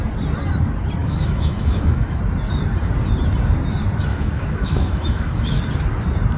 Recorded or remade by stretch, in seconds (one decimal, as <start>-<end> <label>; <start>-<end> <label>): 0.0-1.0 recorded; 1.0-2.2 remade; 2.2-4.1 recorded; 4.1-5.6 remade; 5.6-6.4 recorded